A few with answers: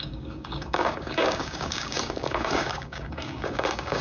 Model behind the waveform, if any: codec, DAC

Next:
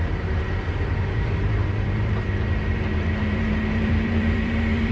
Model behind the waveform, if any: vocoder, BigVGAN v2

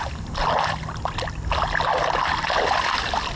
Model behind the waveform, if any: none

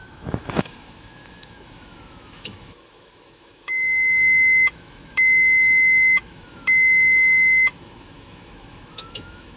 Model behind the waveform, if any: autoencoder, DAC-VAE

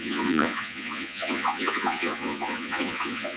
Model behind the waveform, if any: vocoder, Vocos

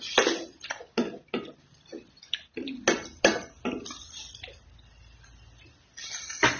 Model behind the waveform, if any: none